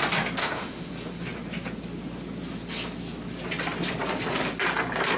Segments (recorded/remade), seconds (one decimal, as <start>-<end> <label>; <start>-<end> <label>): 0.0-0.4 recorded; 0.4-0.9 remade; 0.9-5.2 recorded